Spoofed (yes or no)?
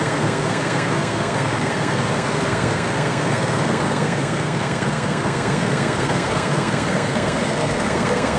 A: yes